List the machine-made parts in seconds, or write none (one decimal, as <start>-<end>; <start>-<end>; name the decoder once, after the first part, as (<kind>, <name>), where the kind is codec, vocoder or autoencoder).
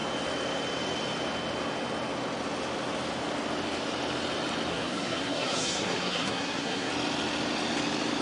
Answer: 4.7-6.9 (codec, SNAC)